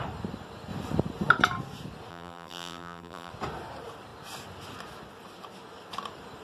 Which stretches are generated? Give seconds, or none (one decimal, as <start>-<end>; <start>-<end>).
2.1-3.3